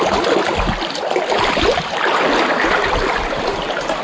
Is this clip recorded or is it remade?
recorded